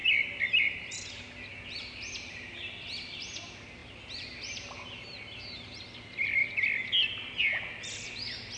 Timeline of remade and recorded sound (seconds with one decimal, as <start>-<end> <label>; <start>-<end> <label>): 0.0-8.6 recorded